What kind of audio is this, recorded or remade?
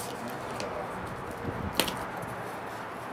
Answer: recorded